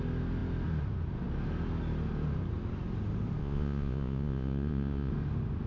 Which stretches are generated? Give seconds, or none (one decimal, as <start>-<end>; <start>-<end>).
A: 3.4-5.1